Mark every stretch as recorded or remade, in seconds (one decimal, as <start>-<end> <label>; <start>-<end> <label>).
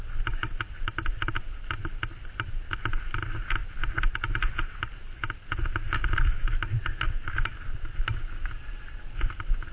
0.0-9.7 recorded